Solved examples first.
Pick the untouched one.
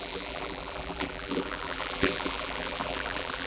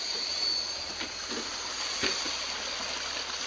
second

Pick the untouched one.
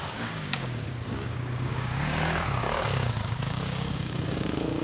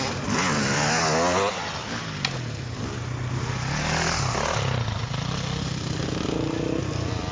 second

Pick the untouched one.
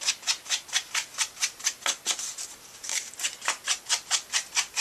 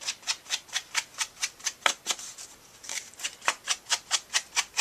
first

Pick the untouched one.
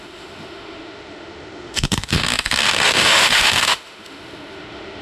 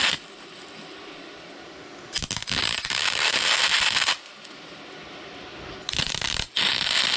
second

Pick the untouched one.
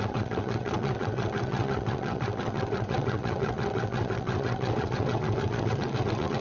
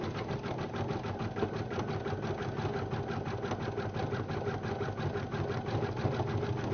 second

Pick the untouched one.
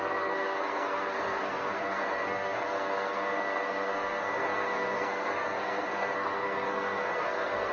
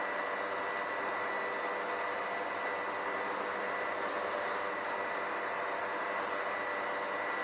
second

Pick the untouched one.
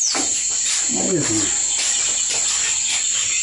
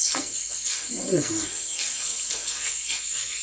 first